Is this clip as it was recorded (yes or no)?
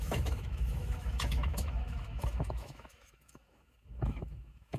no